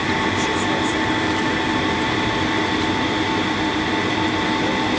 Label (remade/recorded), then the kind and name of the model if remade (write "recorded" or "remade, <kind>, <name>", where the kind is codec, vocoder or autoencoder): recorded